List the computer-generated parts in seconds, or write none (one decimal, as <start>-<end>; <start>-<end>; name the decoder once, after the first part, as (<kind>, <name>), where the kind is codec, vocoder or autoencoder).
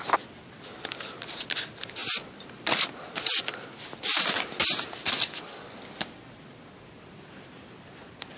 none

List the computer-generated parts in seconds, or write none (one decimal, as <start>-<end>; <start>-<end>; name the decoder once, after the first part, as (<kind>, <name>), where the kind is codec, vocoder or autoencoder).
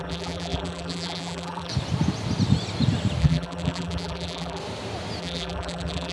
0.0-1.7 (vocoder, BigVGAN v2); 3.2-4.6; 5.2-6.1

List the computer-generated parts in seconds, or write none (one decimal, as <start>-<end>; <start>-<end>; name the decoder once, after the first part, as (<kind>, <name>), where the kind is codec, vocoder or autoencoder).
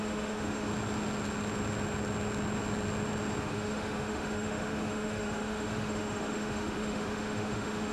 0.0-0.7 (autoencoder, DAC-VAE); 3.4-7.9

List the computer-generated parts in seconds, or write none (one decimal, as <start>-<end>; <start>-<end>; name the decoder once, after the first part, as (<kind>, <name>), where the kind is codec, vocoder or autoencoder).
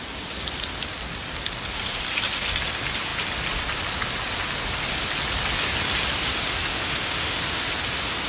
6.7-7.4 (autoencoder, DAC-VAE)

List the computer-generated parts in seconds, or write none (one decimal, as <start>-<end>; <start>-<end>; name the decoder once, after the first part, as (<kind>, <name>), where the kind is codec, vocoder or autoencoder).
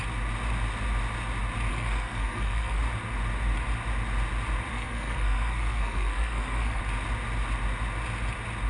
1.7-2.8 (codec, SNAC); 4.7-6.8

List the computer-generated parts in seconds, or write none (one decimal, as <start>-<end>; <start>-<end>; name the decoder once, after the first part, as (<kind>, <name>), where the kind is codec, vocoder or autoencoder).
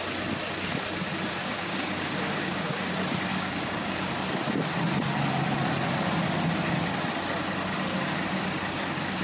1.4-2.9 (codec, DAC); 3.3-4.1